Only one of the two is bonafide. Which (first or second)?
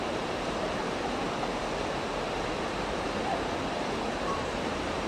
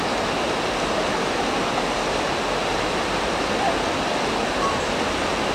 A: second